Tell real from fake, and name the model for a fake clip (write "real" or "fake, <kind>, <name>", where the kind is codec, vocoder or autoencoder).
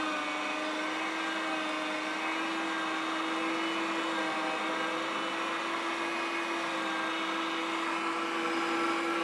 real